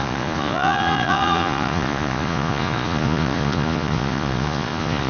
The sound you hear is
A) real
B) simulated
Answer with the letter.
B